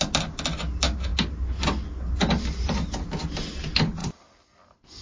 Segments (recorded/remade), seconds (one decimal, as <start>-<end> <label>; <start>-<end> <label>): 0.0-5.0 recorded